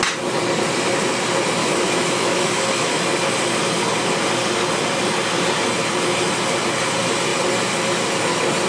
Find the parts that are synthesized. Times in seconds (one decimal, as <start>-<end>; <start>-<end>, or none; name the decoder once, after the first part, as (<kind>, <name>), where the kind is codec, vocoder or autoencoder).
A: 1.6-3.0 (autoencoder, DAC-VAE)